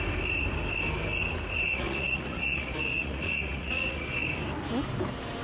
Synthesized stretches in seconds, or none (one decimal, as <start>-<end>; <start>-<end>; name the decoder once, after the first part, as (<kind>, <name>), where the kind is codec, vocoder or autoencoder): 1.7-4.2 (vocoder, Vocos)